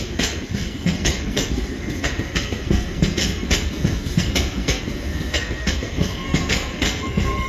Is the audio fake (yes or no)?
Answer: yes